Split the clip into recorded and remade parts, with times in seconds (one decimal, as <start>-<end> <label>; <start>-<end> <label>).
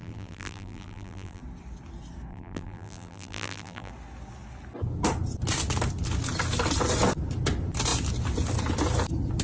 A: 0.0-1.4 remade; 1.4-2.3 recorded; 2.3-3.9 remade; 3.9-9.4 recorded